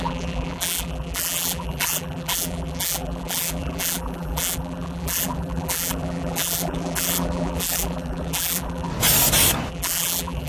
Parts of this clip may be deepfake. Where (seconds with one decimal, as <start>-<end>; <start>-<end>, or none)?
0.0-8.9; 9.7-10.5